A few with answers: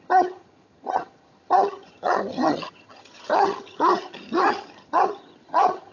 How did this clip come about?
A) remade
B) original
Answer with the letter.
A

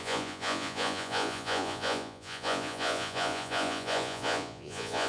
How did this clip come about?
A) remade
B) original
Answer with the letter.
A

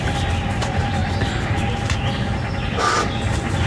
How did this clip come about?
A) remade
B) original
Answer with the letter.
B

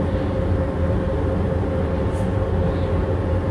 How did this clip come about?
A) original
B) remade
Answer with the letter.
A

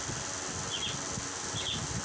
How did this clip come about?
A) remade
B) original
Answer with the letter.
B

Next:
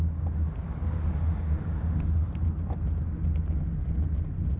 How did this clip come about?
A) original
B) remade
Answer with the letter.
A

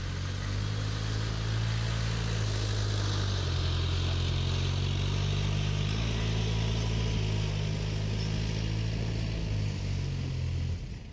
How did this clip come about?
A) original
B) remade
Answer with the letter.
A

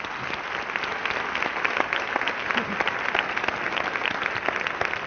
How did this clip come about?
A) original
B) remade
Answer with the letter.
A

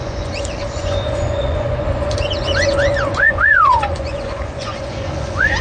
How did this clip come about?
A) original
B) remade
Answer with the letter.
B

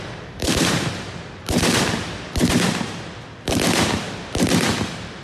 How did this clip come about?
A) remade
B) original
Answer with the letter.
B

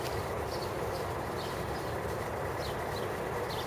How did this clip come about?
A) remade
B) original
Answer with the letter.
B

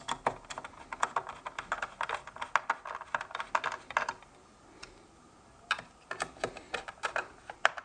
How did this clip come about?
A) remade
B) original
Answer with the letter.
B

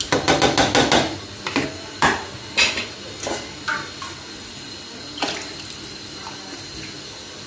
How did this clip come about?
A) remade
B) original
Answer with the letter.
B